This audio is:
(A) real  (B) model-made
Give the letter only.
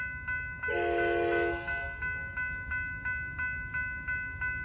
A